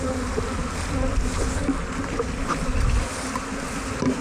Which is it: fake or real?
real